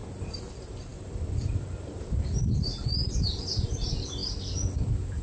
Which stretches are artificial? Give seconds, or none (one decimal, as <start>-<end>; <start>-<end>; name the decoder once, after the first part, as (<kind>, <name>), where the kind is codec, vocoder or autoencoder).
0.0-0.5 (vocoder, BigVGAN v2); 0.9-3.0